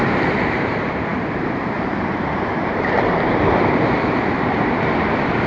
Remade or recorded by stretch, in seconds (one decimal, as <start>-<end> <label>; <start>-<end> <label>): 0.0-5.5 remade